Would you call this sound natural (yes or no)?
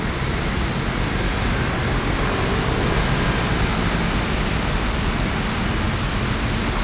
yes